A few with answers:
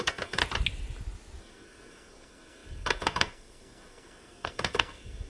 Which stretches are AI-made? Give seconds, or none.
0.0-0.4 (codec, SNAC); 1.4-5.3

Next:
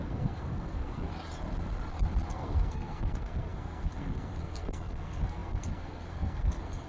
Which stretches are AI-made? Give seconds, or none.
0.0-1.1 (codec, SNAC); 2.3-6.9